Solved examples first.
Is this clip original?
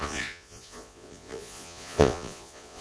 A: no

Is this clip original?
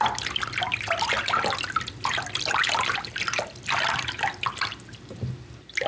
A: yes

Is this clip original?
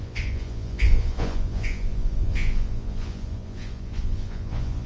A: no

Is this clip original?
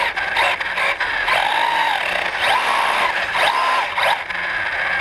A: yes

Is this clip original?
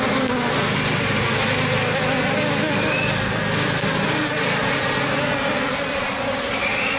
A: yes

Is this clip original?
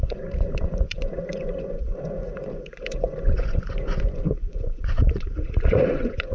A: no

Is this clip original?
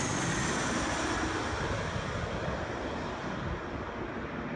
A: yes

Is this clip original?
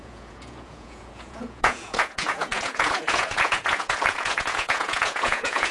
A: no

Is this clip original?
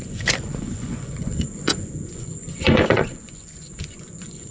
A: no